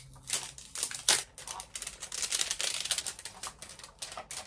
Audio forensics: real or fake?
real